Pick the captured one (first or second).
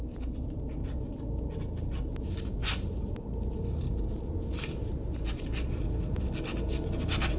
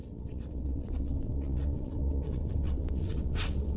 first